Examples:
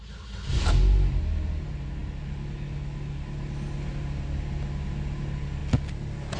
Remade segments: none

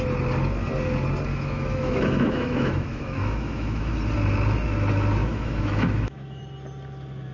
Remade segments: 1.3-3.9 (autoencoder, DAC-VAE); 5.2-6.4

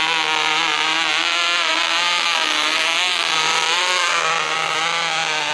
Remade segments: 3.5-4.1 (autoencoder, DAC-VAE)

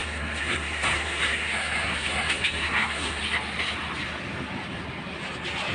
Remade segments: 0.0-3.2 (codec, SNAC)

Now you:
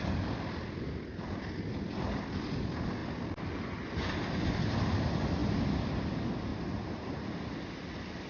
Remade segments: 6.5-7.4 (vocoder, BigVGAN v2)

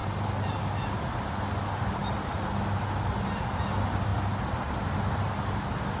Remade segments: none

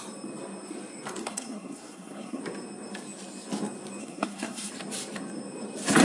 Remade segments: 1.2-2.4 (codec, SNAC); 4.0-4.7